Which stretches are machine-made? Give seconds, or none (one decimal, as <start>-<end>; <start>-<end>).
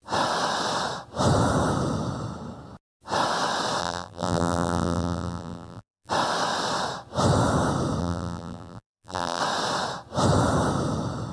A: 3.8-6.1; 8.0-9.4